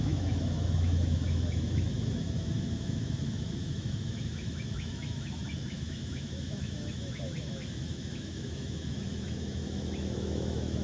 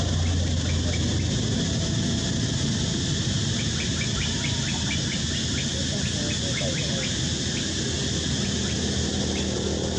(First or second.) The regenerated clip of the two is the first